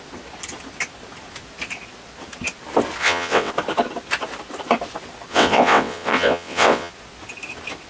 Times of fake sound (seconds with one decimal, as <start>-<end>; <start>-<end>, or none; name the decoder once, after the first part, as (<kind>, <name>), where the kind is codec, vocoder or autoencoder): 3.0-3.5 (vocoder, WaveNeXt); 5.3-6.9